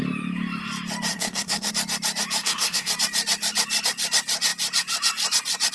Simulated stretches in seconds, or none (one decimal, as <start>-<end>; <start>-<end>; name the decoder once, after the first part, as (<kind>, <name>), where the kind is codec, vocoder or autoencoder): 1.1-1.7 (codec, SNAC); 2.4-2.9